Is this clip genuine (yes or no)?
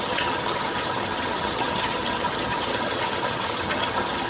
no